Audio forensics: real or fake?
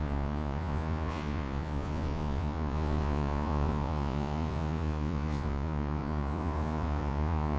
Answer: fake